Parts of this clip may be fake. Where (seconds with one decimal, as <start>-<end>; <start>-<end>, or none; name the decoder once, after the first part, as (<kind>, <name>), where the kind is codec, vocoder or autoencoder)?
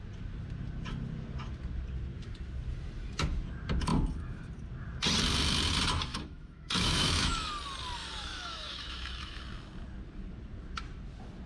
6.1-7.5 (autoencoder, DAC-VAE); 8.0-9.4